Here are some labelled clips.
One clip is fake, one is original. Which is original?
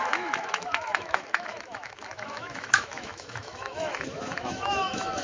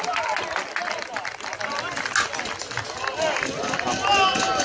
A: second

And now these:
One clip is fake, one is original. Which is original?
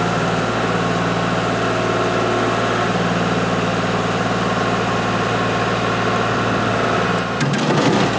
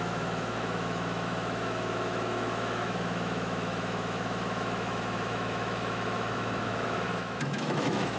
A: first